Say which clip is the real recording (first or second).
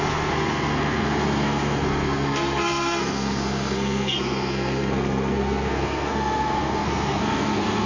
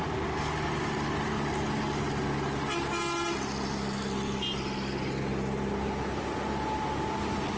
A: second